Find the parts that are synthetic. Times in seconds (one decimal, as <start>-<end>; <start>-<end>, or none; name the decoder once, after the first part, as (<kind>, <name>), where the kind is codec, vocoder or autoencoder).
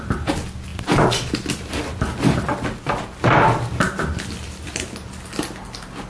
none